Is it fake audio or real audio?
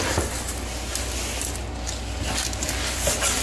real